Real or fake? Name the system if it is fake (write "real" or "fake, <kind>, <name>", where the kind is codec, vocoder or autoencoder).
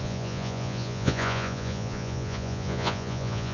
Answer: fake, vocoder, Vocos